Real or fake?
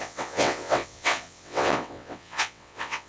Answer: fake